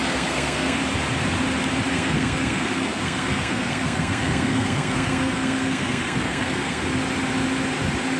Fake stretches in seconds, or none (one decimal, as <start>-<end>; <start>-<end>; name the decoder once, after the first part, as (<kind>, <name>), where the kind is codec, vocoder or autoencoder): 0.0-0.8 (codec, SNAC); 1.9-6.8